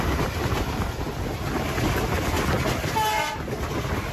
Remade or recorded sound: recorded